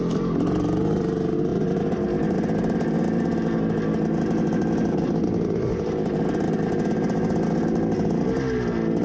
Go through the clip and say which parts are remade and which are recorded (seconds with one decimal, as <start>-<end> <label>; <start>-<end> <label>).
0.0-9.0 recorded